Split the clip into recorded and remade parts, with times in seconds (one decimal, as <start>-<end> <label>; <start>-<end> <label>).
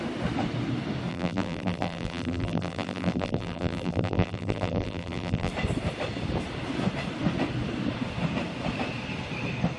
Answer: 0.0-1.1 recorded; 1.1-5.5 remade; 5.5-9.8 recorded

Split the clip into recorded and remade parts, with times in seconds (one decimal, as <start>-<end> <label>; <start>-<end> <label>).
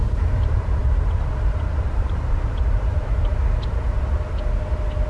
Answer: 0.0-0.8 remade; 0.8-2.0 recorded; 2.0-3.3 remade; 3.3-5.1 recorded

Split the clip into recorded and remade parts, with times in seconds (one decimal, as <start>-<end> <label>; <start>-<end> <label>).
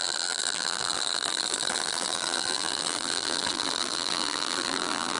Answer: 0.0-5.2 remade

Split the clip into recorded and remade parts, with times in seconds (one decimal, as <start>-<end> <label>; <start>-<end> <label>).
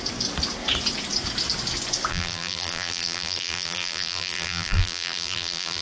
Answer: 0.0-2.1 recorded; 2.1-5.8 remade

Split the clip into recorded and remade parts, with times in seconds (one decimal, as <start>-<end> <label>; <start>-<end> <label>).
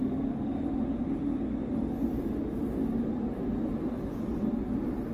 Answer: 0.0-0.5 recorded; 0.5-3.6 remade; 3.6-5.1 recorded